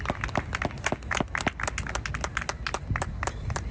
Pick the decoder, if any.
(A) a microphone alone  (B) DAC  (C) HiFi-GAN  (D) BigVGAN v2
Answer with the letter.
A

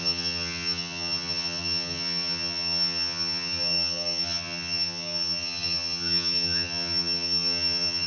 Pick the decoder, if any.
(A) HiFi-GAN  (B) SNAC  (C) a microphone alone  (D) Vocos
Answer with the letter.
A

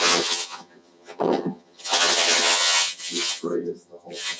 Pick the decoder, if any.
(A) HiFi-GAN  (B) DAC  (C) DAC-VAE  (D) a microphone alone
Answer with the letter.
A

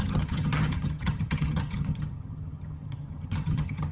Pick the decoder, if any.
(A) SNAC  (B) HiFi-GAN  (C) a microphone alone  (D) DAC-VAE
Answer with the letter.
B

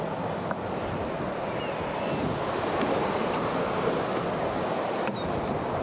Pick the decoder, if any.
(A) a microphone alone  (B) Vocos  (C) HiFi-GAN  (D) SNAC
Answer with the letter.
A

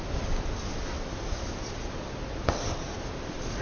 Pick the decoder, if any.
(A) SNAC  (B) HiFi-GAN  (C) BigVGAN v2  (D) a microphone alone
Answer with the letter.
D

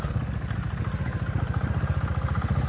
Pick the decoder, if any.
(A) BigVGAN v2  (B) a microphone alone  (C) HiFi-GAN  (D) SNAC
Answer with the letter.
B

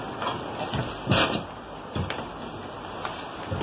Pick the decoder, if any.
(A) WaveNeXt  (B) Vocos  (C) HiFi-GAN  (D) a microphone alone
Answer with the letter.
D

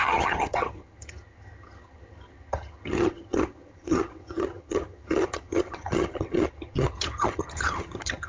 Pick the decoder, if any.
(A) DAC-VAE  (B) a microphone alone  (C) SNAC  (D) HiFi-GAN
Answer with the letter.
D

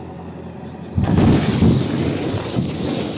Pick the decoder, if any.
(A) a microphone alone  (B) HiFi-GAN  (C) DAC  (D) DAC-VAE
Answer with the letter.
A